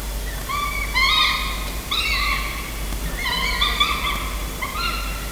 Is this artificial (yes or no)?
no